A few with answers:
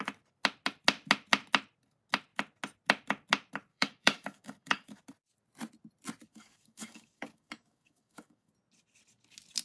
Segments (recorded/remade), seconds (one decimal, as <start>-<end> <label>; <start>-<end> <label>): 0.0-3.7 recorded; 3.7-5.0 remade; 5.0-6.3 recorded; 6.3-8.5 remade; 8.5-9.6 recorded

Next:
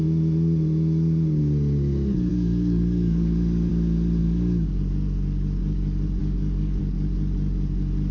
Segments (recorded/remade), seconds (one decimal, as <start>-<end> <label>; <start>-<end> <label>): 0.0-2.3 recorded; 2.3-3.7 remade; 3.7-4.2 recorded; 4.2-4.8 remade; 4.8-6.2 recorded; 6.2-6.8 remade; 6.8-8.1 recorded

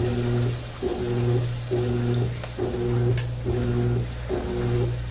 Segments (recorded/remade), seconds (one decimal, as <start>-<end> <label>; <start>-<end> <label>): 0.0-5.1 recorded

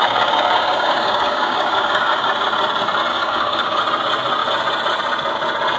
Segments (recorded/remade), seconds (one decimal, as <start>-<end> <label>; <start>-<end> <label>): 0.0-2.3 remade; 2.3-3.1 recorded; 3.1-3.8 remade; 3.8-5.8 recorded

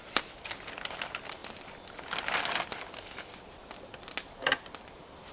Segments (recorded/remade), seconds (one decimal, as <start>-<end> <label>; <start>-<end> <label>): 0.0-5.3 recorded

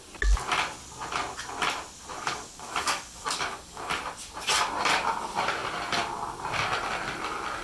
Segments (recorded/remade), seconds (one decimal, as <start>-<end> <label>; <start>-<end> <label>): 0.0-2.1 recorded; 2.1-3.9 remade; 3.9-7.6 recorded

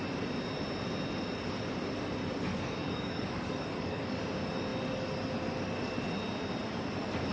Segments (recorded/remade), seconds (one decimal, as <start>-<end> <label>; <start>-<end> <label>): 0.0-2.5 recorded; 2.5-4.2 remade; 4.2-7.3 recorded